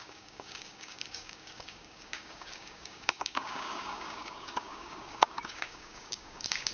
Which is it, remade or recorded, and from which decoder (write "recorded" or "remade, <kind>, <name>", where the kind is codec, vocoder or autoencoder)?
remade, codec, DAC